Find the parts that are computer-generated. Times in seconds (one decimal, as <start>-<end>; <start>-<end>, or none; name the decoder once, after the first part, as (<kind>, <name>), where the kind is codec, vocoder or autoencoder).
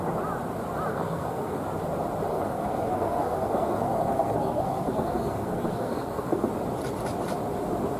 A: 0.9-1.6 (codec, SNAC); 2.3-6.5